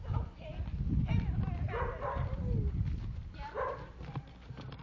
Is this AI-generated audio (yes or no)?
no